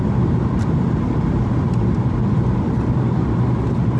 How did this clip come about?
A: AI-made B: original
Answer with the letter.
B